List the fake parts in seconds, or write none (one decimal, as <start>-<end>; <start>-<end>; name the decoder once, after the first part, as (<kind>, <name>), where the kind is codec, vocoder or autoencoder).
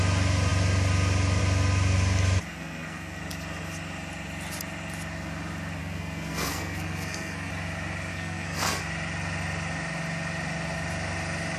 2.5-3.2 (codec, SNAC); 5.8-7.5; 8.1-8.8